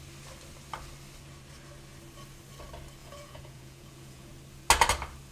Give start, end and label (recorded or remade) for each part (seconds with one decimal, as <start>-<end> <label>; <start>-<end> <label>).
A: 0.0-3.0 recorded; 3.0-4.3 remade; 4.3-5.3 recorded